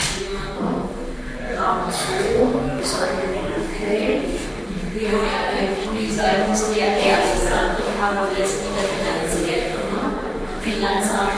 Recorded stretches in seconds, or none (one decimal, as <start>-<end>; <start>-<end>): none